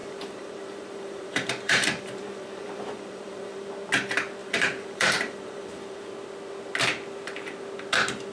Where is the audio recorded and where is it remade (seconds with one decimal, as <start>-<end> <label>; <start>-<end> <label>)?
0.0-3.7 remade; 3.7-4.4 recorded; 4.4-6.1 remade; 6.1-8.3 recorded